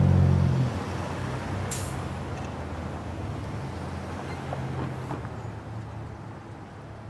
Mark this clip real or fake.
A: real